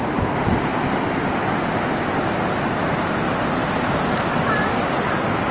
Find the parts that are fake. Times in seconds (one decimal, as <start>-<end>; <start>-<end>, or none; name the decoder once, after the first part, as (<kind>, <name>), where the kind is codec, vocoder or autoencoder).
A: none